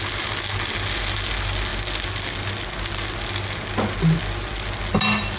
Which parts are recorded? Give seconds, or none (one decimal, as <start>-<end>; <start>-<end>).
0.0-5.4